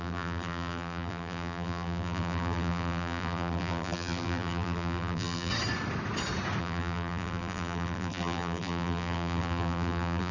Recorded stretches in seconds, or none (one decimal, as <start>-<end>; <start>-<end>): 5.5-6.6